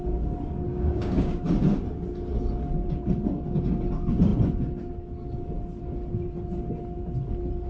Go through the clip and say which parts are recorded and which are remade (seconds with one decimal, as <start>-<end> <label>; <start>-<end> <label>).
0.0-0.7 recorded; 0.7-1.4 remade; 1.4-7.7 recorded